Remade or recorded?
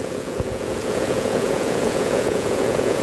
remade